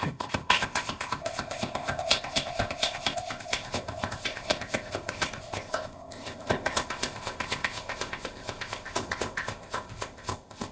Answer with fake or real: fake